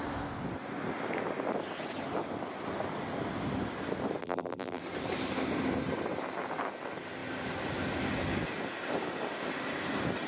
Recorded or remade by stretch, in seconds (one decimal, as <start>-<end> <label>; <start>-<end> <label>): 0.0-4.2 recorded; 4.2-4.8 remade; 4.8-10.3 recorded